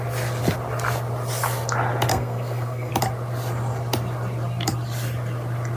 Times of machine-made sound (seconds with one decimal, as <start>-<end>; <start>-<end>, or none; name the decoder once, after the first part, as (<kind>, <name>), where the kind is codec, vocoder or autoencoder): 2.1-2.9 (codec, SNAC)